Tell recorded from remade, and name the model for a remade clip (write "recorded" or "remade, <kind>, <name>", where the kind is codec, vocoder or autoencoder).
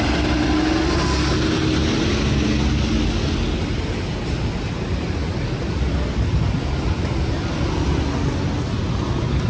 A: recorded